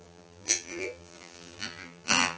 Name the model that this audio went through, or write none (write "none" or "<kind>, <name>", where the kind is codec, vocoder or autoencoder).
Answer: vocoder, BigVGAN v2